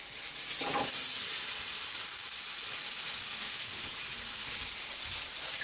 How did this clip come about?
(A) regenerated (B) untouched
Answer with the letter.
B